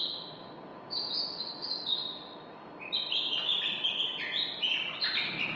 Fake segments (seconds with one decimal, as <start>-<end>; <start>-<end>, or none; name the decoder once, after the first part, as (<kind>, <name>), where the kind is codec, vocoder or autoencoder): 2.0-4.0 (vocoder, BigVGAN v2)